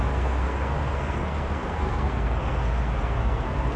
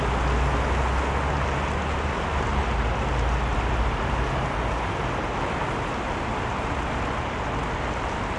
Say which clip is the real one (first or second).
second